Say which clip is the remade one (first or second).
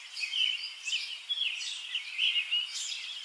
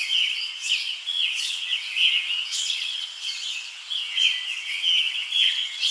second